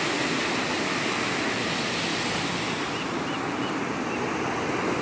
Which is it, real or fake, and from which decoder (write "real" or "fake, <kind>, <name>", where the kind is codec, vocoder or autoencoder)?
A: real